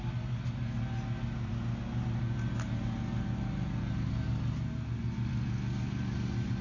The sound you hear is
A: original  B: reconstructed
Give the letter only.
A